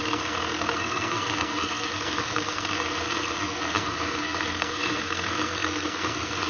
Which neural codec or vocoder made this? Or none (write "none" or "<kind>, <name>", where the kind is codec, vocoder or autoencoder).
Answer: codec, SNAC